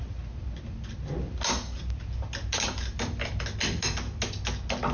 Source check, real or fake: real